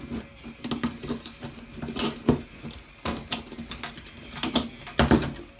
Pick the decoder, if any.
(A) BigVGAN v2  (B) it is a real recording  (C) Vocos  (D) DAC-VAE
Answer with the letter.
B